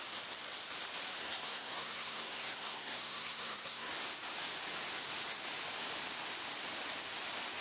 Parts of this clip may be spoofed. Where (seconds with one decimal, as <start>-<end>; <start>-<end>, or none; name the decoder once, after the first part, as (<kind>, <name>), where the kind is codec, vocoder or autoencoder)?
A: 1.2-3.9 (codec, SNAC)